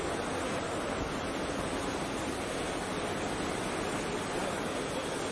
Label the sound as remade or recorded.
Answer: recorded